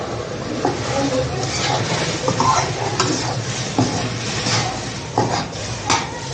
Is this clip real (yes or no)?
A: yes